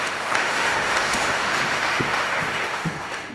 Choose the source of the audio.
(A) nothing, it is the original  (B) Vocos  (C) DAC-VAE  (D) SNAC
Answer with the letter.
C